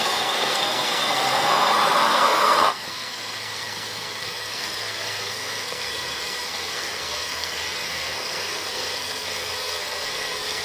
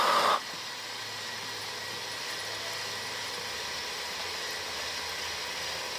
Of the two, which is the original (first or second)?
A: second